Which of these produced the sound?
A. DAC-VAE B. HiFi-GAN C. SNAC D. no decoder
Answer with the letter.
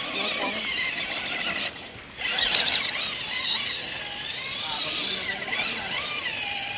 D